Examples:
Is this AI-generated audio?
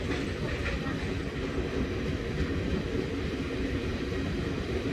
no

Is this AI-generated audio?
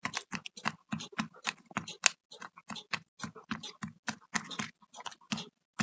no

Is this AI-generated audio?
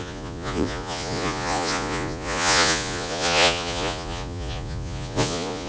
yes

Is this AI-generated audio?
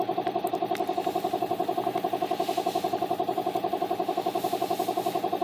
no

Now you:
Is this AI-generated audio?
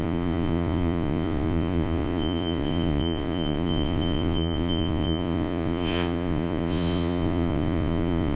yes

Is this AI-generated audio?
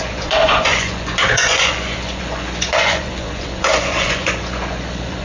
yes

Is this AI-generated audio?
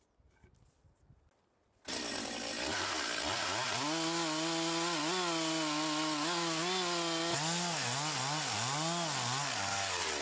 no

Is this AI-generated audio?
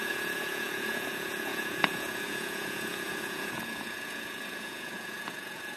yes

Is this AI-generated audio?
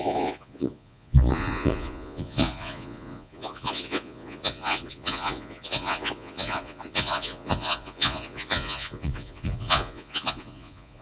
yes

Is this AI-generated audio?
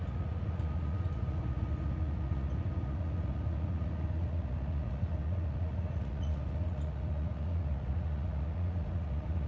yes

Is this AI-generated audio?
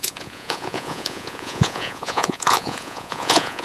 yes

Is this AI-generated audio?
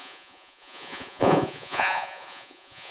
yes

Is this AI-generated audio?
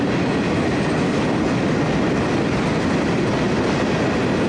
no